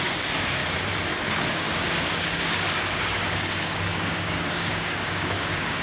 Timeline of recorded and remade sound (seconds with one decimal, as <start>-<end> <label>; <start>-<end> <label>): 0.0-0.6 remade; 0.6-1.5 recorded; 1.5-5.8 remade